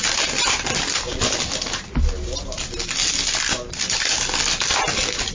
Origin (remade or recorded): recorded